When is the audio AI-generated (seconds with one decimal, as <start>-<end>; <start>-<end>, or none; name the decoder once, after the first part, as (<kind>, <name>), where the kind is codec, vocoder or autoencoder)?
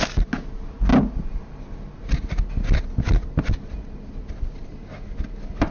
none